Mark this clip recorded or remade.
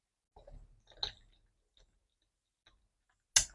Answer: recorded